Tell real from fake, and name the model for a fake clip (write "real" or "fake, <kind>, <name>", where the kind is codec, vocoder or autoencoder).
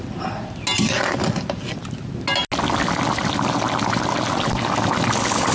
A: real